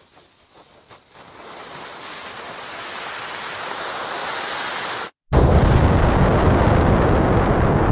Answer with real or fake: real